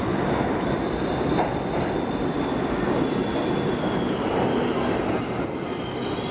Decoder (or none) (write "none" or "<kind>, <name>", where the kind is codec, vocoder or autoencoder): none